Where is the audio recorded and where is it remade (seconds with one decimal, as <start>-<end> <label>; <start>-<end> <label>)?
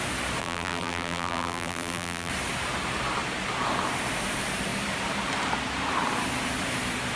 0.0-0.4 recorded; 0.4-2.3 remade; 2.3-7.2 recorded